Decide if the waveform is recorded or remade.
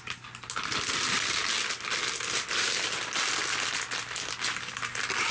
recorded